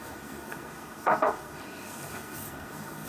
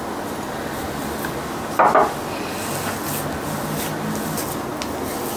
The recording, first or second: second